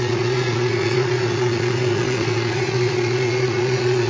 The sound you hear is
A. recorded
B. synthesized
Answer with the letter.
B